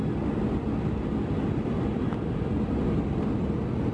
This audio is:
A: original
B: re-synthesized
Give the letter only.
A